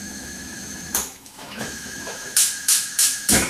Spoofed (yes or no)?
yes